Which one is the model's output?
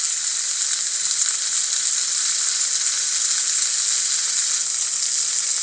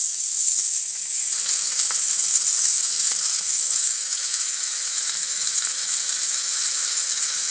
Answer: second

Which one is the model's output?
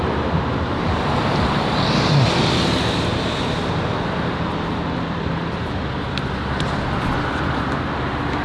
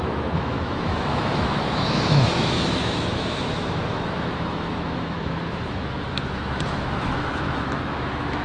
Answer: second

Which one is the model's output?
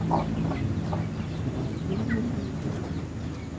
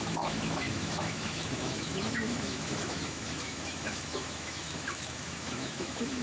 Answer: second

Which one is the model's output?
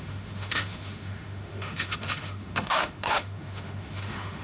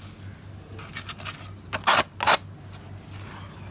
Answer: first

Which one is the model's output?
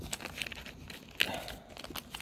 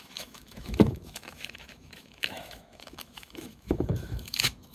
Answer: second